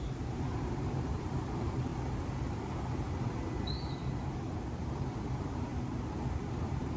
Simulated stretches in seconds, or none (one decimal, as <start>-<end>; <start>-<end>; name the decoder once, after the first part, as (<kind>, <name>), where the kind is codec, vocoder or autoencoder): 0.0-1.9 (vocoder, BigVGAN v2); 3.5-4.0; 4.5-5.7; 6.4-7.0